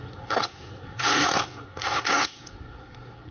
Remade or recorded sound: remade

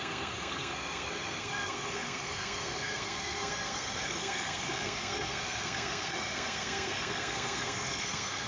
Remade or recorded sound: remade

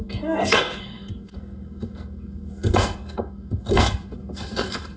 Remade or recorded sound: remade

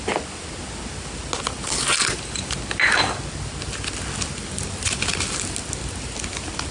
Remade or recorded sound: recorded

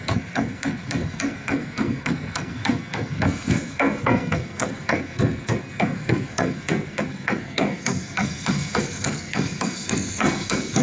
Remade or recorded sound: remade